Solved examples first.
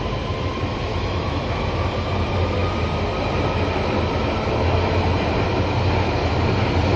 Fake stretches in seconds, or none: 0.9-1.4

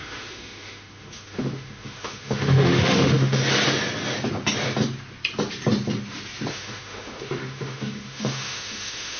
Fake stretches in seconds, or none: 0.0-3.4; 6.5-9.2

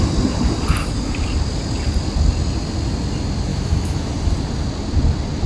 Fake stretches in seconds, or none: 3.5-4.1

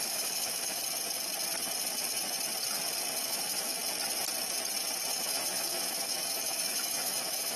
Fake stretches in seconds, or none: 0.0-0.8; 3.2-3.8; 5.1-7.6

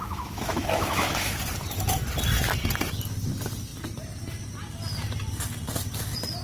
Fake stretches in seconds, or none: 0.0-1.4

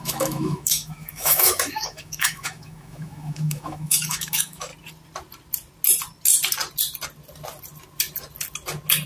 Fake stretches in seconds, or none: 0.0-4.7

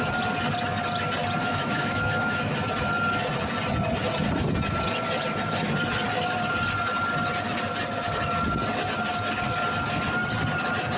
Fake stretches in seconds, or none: 1.4-2.5

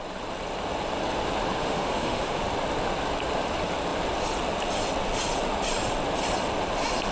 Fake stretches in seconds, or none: 1.6-2.4